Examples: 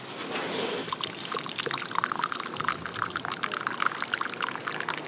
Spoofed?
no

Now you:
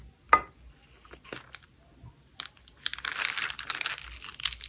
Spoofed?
no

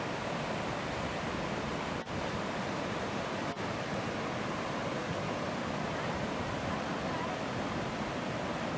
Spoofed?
no